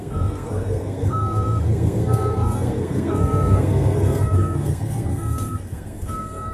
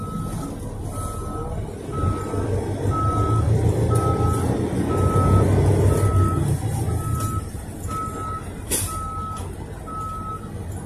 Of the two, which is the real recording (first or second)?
second